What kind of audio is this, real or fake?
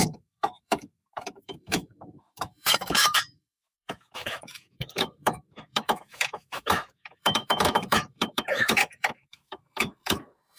fake